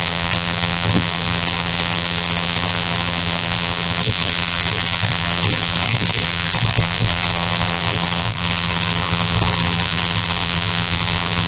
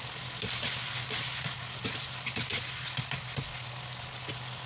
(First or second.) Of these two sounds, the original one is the second